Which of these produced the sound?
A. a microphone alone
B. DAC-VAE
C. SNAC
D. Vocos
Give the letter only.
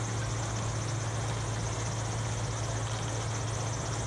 A